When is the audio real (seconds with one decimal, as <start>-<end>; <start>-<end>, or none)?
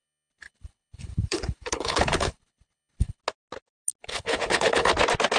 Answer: 3.2-4.0; 4.9-5.4